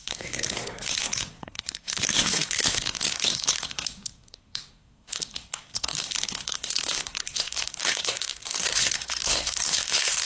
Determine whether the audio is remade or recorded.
remade